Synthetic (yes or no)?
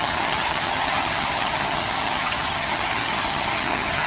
yes